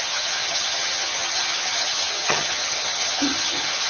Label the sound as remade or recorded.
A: remade